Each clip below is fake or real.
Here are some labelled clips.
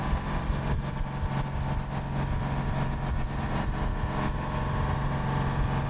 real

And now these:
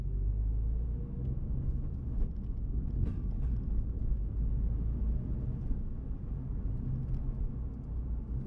real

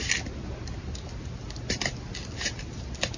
real